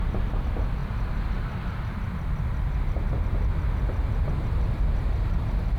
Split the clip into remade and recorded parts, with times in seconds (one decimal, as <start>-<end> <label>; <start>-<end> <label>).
0.0-5.8 recorded